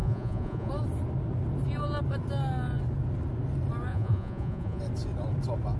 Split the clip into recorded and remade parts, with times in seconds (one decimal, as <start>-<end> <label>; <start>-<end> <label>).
0.0-0.7 remade; 0.7-3.9 recorded; 3.9-4.8 remade; 4.8-5.8 recorded

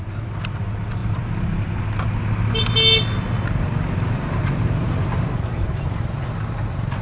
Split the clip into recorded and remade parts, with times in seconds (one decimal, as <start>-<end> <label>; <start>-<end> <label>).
0.0-7.0 recorded

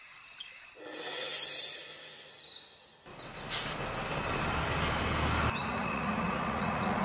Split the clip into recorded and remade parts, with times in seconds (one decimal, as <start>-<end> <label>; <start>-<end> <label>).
0.0-5.6 recorded; 5.6-7.0 remade

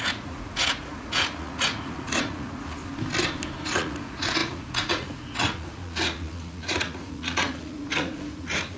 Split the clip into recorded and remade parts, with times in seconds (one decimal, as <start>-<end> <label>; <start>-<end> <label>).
0.0-2.8 remade; 2.8-3.6 recorded; 3.6-8.8 remade

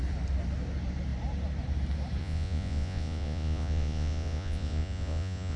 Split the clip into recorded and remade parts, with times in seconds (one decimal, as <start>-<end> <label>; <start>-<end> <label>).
0.0-2.2 recorded; 2.2-5.6 remade